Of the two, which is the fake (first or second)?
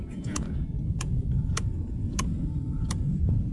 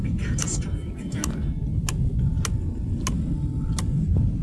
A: first